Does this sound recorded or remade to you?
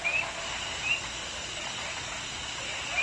recorded